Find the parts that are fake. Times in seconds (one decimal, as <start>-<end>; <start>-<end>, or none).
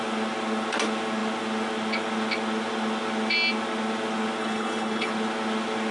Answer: 4.4-5.1